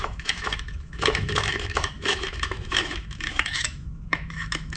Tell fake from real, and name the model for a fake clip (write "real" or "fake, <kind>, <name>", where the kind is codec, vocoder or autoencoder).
fake, autoencoder, DAC-VAE